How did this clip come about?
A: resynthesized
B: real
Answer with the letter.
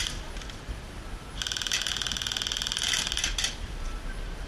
B